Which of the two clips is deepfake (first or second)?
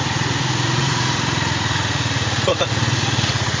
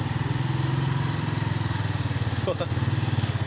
first